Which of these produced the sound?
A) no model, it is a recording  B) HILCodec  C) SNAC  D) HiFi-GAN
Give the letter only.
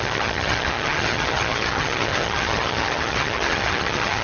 D